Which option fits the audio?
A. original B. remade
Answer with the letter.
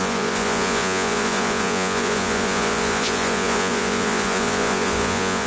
B